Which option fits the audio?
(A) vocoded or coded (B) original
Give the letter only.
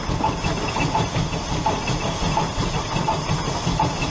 B